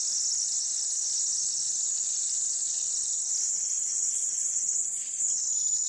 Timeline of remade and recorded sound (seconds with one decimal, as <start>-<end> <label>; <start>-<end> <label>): 0.0-3.8 recorded; 3.8-5.3 remade; 5.3-5.9 recorded